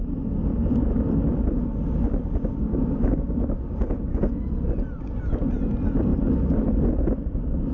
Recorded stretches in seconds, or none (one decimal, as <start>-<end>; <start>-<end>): 0.0-2.7; 3.4-7.7